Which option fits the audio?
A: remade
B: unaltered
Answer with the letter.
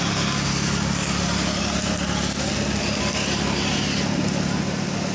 B